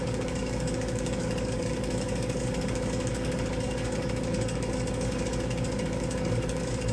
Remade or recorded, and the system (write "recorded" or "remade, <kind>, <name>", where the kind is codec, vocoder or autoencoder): remade, codec, DAC